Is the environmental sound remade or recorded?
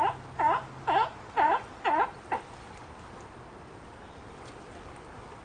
recorded